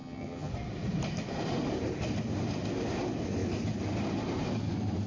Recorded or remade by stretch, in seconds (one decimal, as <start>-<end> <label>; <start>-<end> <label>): 0.0-0.5 remade; 0.5-5.1 recorded